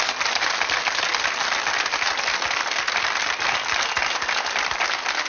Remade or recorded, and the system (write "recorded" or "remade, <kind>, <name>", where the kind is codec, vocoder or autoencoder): recorded